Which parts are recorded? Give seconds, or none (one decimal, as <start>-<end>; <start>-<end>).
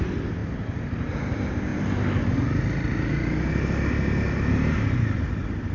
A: 0.0-5.7